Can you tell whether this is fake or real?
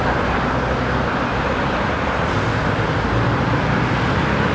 real